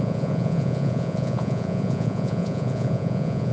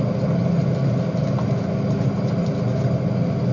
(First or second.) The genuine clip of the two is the second